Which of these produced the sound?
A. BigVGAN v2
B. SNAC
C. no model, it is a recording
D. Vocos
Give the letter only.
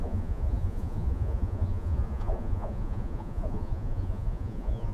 D